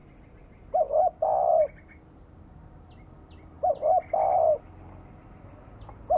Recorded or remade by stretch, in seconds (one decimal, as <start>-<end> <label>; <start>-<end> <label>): 0.0-6.2 recorded

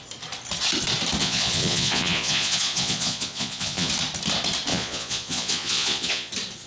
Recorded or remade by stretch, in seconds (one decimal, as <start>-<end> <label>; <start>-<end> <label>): 0.0-1.2 recorded; 1.2-3.9 remade; 3.9-4.7 recorded; 4.7-6.3 remade; 6.3-6.7 recorded

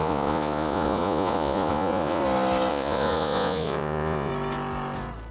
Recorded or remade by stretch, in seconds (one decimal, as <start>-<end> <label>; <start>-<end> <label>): 0.0-2.2 remade; 2.2-2.7 recorded; 2.7-4.3 remade; 4.3-5.3 recorded